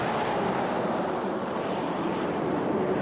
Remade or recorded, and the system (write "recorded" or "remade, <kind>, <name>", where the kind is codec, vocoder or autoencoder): remade, vocoder, BigVGAN v2